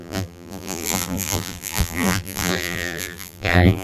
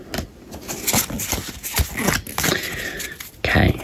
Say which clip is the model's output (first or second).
first